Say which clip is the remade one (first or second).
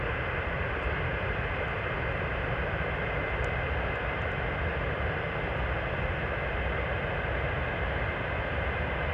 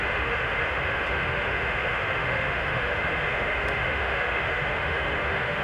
second